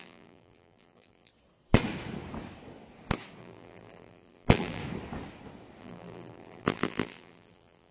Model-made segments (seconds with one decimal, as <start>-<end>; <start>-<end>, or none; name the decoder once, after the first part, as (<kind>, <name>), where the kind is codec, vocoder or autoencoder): 0.0-1.3 (vocoder, BigVGAN v2); 3.4-4.8; 5.8-7.9